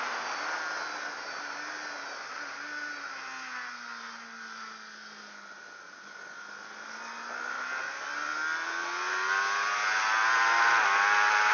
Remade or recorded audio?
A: recorded